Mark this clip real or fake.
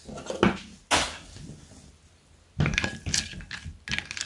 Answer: real